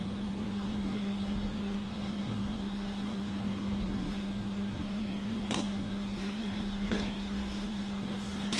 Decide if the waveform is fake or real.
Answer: fake